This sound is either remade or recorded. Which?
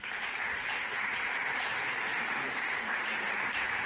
remade